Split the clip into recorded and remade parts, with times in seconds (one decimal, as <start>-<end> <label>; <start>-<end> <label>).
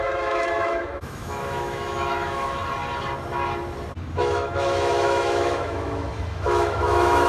0.0-2.6 remade; 2.6-4.1 recorded; 4.1-7.3 remade